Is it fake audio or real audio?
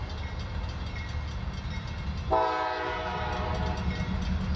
real